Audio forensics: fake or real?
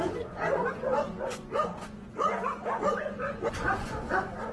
fake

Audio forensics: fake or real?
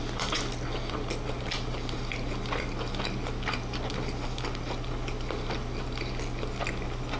real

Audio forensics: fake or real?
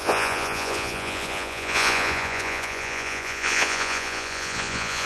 fake